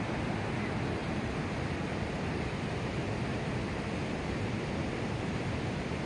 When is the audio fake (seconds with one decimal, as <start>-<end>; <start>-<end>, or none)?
none